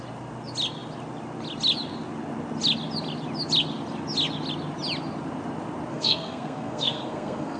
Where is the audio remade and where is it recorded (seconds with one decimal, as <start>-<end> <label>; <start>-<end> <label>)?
0.0-5.9 recorded; 5.9-7.6 remade